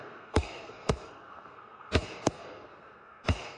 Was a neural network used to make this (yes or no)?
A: yes